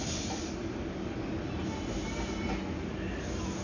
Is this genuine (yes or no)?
yes